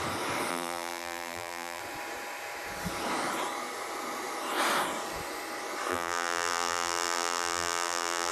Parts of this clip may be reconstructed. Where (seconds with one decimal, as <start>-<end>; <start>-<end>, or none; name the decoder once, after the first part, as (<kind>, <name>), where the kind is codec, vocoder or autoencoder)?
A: 0.5-1.8 (vocoder, BigVGAN v2); 5.9-8.3